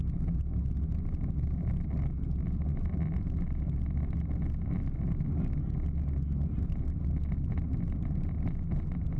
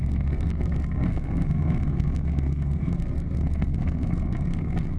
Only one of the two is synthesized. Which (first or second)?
second